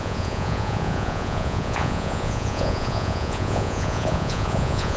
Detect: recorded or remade remade